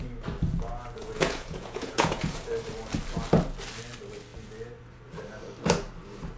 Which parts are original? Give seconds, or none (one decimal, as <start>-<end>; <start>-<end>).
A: 0.0-1.0; 2.5-6.4